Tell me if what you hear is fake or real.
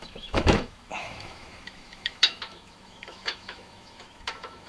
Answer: fake